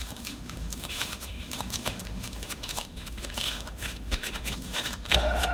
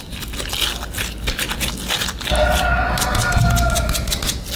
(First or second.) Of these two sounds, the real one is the second